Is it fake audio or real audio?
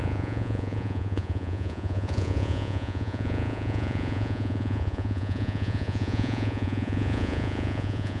fake